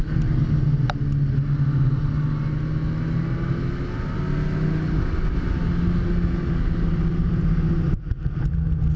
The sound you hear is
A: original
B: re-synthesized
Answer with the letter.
A